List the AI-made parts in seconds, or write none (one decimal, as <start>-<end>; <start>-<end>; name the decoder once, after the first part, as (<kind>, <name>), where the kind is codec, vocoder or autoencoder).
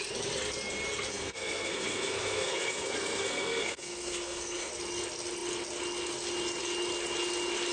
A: 1.1-4.7 (codec, SNAC)